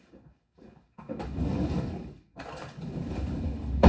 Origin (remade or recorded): remade